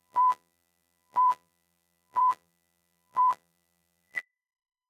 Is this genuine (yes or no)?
no